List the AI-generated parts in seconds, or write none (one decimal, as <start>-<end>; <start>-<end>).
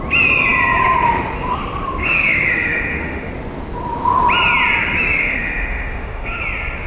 2.0-3.3; 5.2-6.4